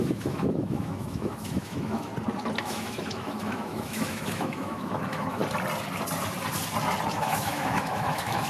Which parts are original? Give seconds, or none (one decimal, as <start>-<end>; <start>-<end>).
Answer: 2.1-2.6; 5.4-7.1